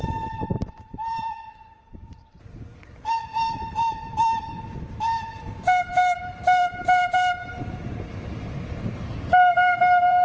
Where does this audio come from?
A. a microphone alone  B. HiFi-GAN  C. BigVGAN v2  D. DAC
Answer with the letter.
C